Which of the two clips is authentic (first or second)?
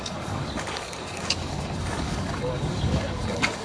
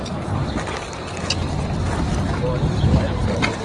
second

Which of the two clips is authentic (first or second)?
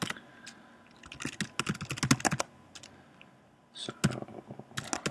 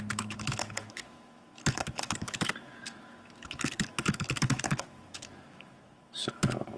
first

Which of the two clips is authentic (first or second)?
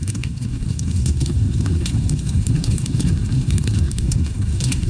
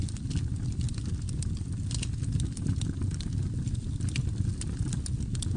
second